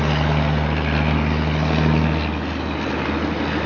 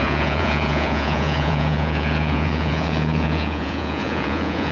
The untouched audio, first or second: first